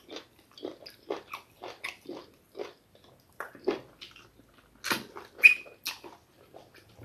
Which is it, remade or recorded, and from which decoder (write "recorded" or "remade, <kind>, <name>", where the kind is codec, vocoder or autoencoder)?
recorded